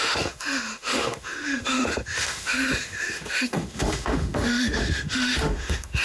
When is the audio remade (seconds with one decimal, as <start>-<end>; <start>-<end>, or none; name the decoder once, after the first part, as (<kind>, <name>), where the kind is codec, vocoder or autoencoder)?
0.0-6.0 (autoencoder, DAC-VAE)